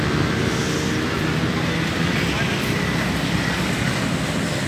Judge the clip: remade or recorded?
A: recorded